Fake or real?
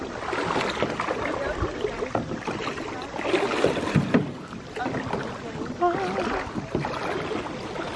real